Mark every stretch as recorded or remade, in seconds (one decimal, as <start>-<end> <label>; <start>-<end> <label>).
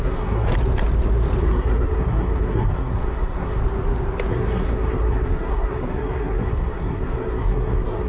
0.0-0.5 remade; 0.5-1.4 recorded; 1.4-3.6 remade; 3.6-4.3 recorded; 4.3-8.1 remade